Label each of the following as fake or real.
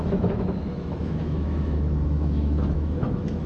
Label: fake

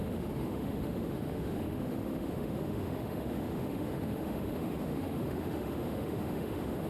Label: fake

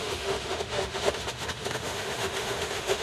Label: fake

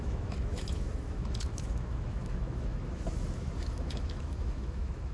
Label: fake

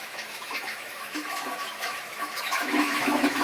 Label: fake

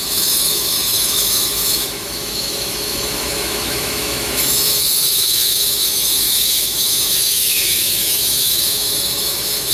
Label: fake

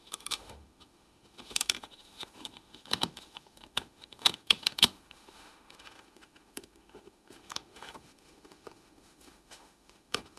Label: fake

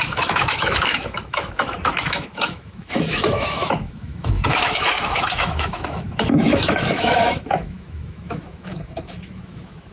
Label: fake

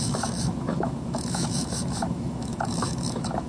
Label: fake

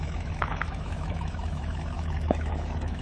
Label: fake